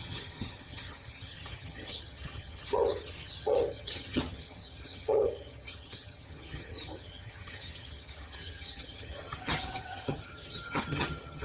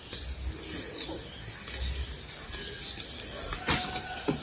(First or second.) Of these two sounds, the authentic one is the second